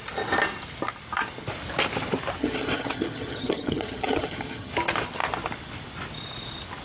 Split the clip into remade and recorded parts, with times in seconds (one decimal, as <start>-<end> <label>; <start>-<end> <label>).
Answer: 0.0-2.4 recorded; 2.4-4.7 remade; 4.7-6.8 recorded